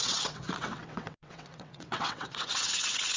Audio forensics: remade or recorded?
remade